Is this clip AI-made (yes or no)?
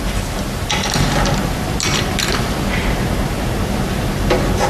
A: no